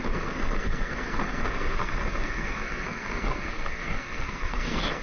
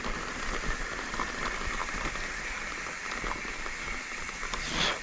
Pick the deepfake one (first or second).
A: first